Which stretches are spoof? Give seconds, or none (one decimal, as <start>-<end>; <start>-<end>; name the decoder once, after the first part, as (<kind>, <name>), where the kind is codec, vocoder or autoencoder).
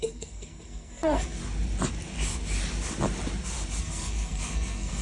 0.0-1.4 (codec, SNAC); 3.8-5.0